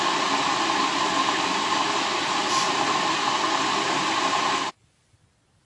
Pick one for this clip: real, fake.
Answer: real